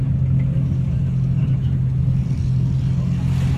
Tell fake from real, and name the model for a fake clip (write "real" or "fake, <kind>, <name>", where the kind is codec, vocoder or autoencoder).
real